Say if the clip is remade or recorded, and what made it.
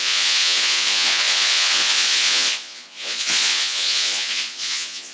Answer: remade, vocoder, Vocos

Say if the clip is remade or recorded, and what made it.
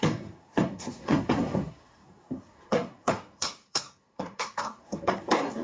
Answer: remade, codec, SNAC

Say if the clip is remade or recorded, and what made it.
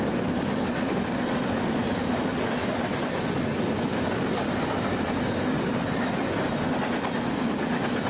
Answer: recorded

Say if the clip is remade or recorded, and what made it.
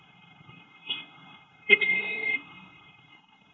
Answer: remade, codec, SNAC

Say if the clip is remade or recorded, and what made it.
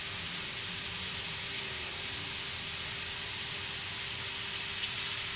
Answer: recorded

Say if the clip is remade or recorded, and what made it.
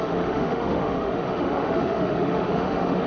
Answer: remade, autoencoder, DAC-VAE